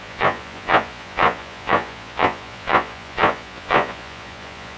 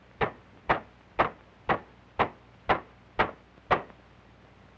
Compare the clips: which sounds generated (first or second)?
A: first